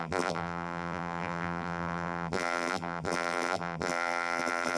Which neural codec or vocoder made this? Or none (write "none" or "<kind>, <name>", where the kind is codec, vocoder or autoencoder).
vocoder, BigVGAN v2